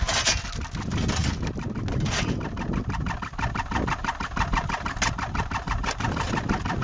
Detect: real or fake real